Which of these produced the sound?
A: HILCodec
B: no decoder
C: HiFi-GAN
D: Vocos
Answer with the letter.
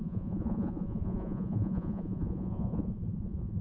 D